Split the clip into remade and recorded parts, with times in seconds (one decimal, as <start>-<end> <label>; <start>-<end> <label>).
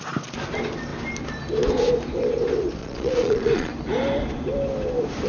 0.0-2.8 recorded; 2.8-3.7 remade; 3.7-5.3 recorded